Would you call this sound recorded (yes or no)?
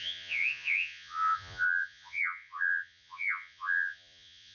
no